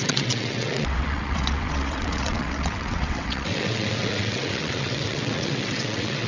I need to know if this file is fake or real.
fake